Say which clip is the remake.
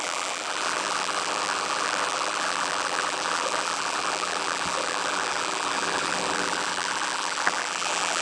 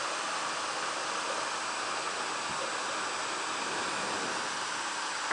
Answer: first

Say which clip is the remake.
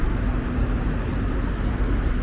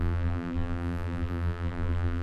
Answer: second